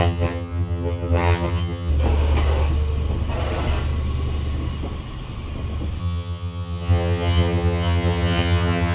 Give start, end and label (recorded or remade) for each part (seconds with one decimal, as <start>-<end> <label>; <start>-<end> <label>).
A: 0.0-1.9 remade; 1.9-6.0 recorded; 6.0-8.9 remade